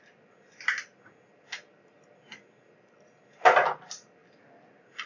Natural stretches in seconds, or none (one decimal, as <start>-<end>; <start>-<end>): 0.0-5.1